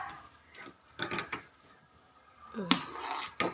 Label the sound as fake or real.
real